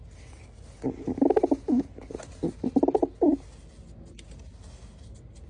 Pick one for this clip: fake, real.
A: real